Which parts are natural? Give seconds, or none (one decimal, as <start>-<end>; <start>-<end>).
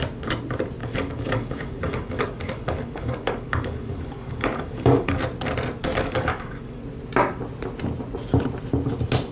0.0-0.8; 5.2-5.8; 6.8-9.3